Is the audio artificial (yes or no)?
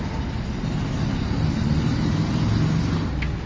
no